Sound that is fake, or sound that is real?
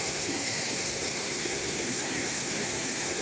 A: fake